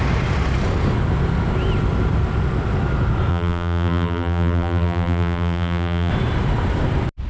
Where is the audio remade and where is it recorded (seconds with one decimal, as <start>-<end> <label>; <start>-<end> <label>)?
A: 0.0-3.3 recorded; 3.3-6.1 remade; 6.1-7.3 recorded